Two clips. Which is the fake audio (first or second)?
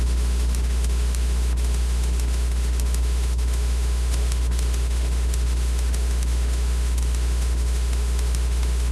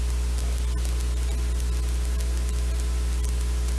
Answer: first